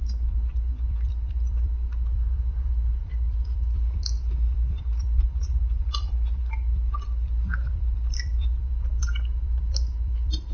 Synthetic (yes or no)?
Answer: yes